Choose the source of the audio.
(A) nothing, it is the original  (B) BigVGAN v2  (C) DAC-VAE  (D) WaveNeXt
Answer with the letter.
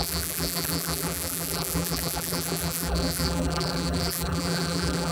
B